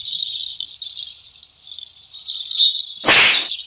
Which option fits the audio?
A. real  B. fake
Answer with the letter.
A